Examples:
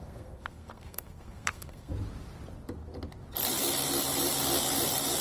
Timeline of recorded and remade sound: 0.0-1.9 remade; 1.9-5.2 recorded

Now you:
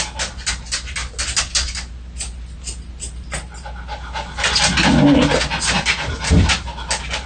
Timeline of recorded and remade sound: 0.0-7.3 recorded

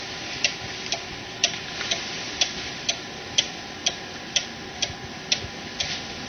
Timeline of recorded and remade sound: 0.0-1.4 recorded; 1.4-4.8 remade; 4.8-6.3 recorded